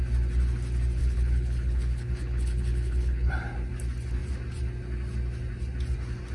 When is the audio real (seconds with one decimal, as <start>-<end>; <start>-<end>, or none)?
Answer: 0.0-1.0; 3.3-6.3